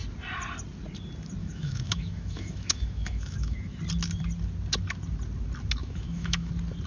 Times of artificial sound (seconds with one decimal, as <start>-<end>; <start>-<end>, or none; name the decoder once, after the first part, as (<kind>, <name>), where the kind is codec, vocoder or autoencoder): 1.4-3.8 (autoencoder, DAC-VAE); 5.8-6.5